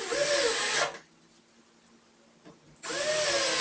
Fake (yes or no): no